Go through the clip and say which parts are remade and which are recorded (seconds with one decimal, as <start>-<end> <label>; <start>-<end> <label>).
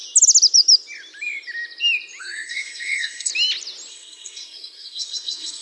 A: 0.0-2.2 recorded; 2.2-3.3 remade; 3.3-3.9 recorded; 3.9-5.6 remade